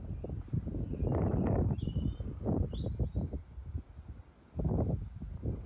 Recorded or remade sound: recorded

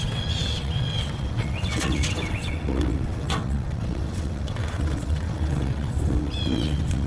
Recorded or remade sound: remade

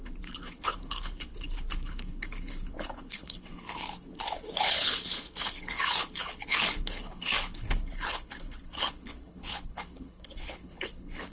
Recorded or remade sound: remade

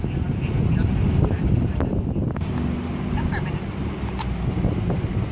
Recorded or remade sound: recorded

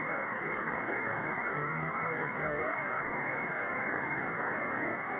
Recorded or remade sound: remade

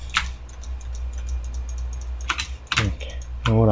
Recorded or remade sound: recorded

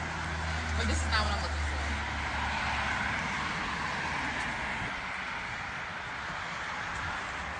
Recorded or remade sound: recorded